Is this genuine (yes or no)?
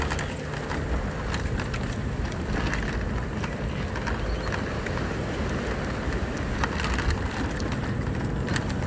yes